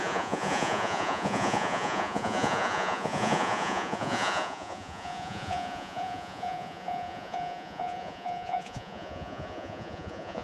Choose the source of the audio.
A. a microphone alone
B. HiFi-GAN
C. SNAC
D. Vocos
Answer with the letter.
D